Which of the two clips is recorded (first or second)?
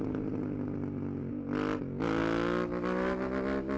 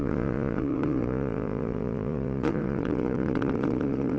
first